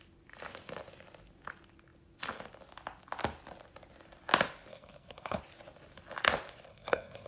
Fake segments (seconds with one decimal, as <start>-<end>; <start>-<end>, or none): 4.7-5.4; 6.7-7.3